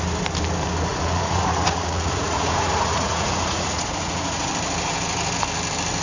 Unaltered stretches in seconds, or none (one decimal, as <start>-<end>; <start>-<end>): 0.0-0.9; 4.5-6.0